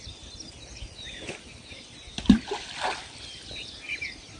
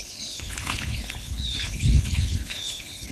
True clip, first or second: first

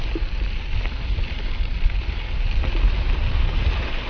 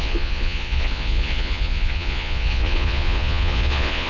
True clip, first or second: first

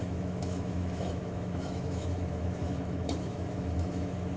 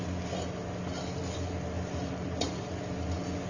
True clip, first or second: second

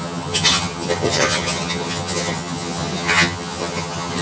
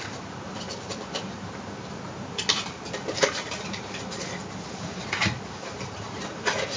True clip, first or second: second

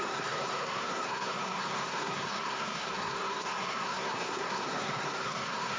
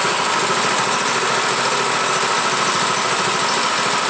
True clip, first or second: second